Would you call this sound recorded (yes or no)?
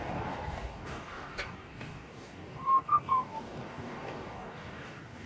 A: no